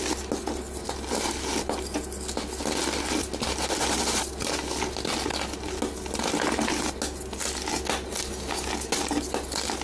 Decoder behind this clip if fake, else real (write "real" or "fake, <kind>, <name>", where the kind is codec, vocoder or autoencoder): real